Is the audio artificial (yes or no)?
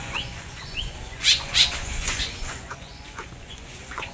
yes